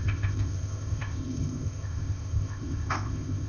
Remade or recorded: remade